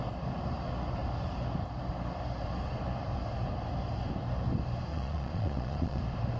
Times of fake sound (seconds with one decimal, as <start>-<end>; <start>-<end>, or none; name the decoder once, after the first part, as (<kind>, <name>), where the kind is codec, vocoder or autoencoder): 4.9-6.0 (vocoder, Vocos)

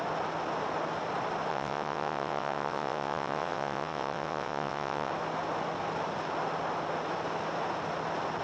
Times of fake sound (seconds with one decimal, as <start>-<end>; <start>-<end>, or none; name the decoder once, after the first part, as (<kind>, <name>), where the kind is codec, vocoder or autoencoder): 1.5-5.1 (vocoder, WaveNeXt)

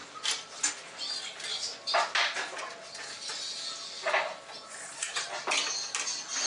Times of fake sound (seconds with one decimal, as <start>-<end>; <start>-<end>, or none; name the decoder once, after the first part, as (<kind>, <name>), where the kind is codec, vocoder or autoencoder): none

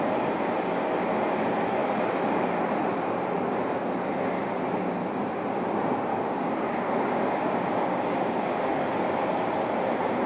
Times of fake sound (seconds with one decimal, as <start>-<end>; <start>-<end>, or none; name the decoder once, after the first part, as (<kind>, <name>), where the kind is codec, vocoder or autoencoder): 6.1-8.9 (codec, DAC)

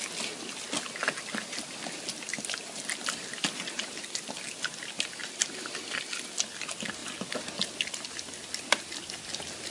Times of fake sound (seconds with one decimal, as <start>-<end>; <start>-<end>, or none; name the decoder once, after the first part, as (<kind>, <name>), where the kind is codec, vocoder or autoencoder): 1.0-4.7 (vocoder, BigVGAN v2); 5.2-6.6

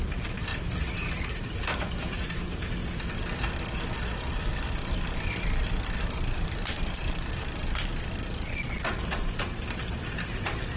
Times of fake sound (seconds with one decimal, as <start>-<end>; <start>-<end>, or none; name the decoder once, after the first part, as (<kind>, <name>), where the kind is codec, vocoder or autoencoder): 0.0-0.5 (vocoder, BigVGAN v2); 2.0-2.8; 4.5-10.8